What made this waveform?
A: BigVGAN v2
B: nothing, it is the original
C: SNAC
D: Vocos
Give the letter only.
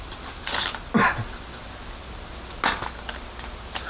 B